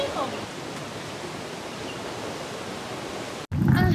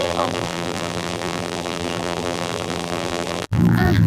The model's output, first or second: second